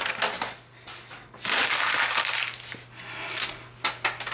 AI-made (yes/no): no